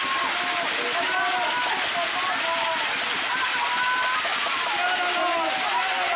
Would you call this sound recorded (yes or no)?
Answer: yes